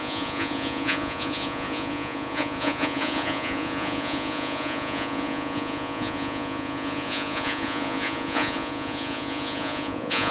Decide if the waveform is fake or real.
fake